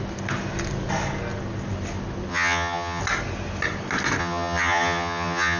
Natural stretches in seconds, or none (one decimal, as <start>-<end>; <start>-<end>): 0.0-2.3; 3.0-4.2